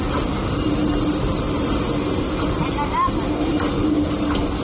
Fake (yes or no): no